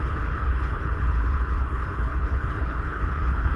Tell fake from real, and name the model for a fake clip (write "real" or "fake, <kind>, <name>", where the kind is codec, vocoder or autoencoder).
fake, codec, HILCodec